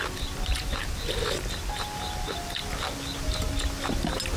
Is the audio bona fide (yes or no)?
yes